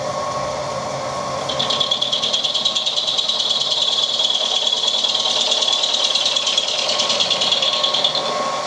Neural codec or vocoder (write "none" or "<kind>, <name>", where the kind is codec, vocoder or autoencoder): none